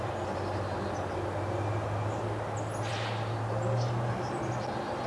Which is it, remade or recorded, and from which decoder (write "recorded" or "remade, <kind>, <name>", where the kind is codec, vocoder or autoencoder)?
recorded